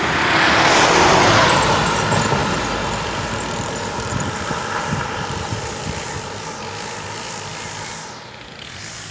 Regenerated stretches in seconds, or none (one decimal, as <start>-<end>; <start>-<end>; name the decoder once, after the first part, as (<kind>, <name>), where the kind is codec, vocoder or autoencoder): 2.4-6.5 (vocoder, BigVGAN v2)